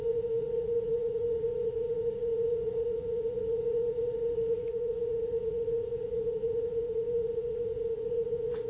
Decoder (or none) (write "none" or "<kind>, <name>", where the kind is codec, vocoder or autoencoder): vocoder, Vocos